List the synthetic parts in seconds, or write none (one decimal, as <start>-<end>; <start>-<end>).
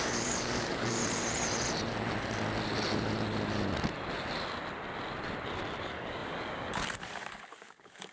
0.0-1.0; 5.8-8.1